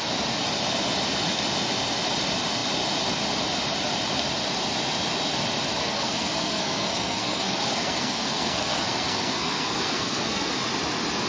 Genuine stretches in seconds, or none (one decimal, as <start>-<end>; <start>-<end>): 0.0-5.8; 10.5-11.3